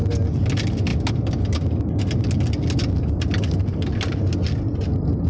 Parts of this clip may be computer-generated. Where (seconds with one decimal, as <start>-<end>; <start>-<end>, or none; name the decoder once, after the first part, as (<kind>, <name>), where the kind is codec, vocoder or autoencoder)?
none